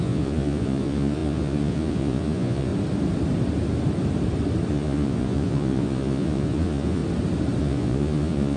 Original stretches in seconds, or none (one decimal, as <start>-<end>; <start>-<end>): 2.7-4.7; 7.0-7.6